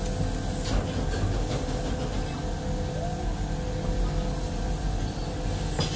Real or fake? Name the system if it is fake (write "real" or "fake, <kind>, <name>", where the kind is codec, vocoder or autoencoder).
real